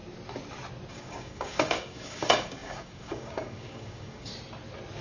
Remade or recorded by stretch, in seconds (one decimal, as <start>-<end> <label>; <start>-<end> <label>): 0.0-0.9 recorded; 0.9-4.3 remade; 4.3-5.0 recorded